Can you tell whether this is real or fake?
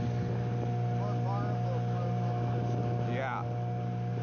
real